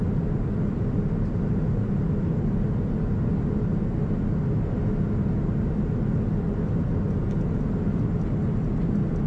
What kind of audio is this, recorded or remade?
recorded